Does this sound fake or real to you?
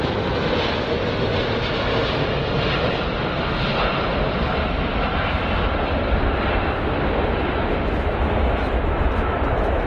real